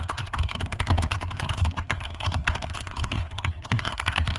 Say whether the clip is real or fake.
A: fake